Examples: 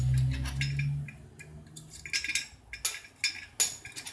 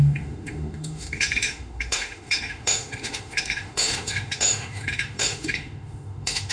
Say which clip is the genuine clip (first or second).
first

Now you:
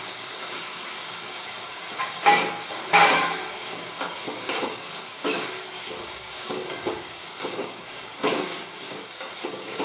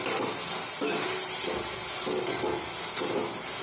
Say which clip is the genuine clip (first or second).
second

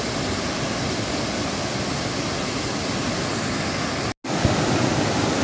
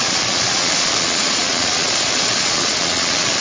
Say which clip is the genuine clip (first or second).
first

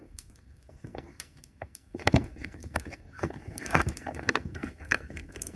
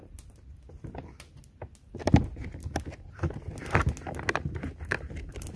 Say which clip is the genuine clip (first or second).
second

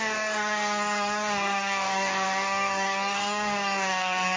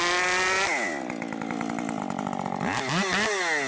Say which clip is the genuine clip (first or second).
second